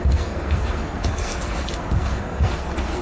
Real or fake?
fake